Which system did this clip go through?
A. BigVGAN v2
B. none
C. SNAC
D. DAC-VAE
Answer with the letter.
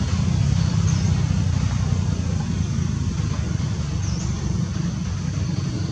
B